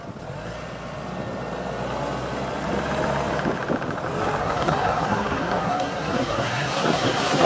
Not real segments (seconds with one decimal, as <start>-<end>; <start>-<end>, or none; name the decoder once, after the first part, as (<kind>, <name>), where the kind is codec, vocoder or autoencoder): 4.4-7.5 (codec, SNAC)